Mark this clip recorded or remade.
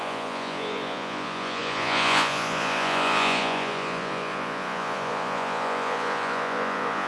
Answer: remade